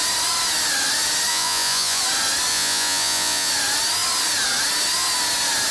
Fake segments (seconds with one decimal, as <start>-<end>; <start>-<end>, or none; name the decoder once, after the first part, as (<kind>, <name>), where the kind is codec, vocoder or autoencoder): 1.3-2.0 (vocoder, Vocos); 2.5-3.5